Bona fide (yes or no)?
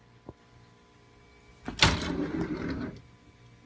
yes